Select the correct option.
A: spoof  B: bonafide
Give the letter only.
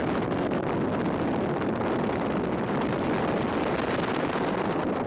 B